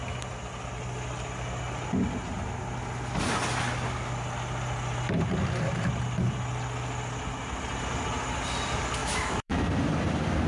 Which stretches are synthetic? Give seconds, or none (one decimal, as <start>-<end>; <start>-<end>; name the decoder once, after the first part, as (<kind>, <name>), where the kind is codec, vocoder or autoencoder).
9.0-9.6 (autoencoder, DAC-VAE)

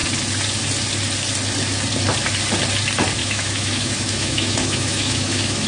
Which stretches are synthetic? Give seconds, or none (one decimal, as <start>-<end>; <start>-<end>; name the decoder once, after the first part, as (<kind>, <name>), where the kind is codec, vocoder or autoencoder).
3.2-5.7 (autoencoder, DAC-VAE)

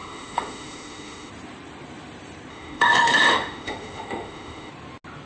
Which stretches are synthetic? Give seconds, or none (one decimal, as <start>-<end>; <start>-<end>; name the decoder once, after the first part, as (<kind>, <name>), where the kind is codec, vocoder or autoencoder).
0.0-1.3 (autoencoder, DAC-VAE); 2.5-4.7

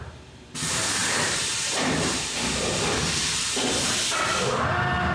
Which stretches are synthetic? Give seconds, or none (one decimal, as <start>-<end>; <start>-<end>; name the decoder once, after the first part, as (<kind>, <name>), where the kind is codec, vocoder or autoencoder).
none

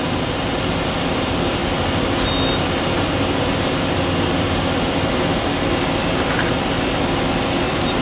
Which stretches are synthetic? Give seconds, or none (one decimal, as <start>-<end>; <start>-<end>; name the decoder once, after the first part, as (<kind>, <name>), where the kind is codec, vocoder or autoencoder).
none

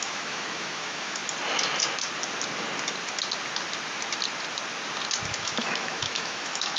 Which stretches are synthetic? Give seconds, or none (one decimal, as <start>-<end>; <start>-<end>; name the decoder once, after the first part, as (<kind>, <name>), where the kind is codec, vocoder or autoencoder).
0.0-1.2 (autoencoder, DAC-VAE); 5.3-6.8

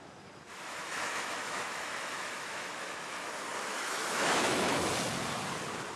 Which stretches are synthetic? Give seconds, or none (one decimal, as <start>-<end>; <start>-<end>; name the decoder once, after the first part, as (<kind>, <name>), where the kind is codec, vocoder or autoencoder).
0.5-3.3 (autoencoder, DAC-VAE); 3.7-4.9

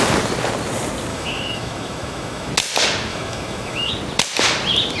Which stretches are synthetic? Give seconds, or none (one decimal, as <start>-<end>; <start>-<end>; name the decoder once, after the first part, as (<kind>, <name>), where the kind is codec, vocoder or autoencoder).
1.1-2.5 (autoencoder, DAC-VAE); 3.1-3.9